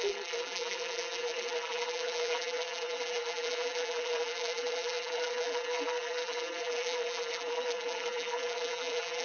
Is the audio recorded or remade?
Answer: remade